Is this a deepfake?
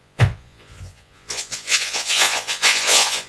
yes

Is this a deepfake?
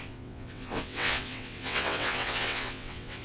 yes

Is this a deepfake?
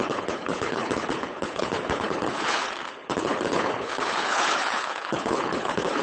yes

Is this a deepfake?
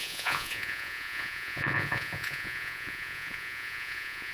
yes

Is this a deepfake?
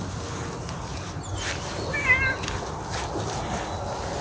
no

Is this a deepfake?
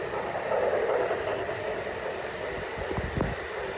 no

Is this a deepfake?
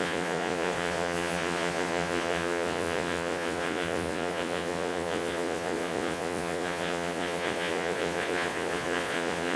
yes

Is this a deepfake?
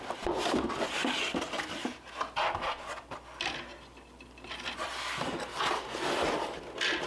no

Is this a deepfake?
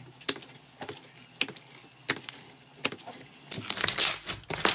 no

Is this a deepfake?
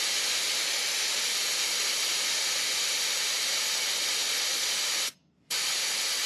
no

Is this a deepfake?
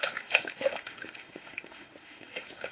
yes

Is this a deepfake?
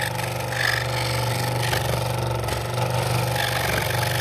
no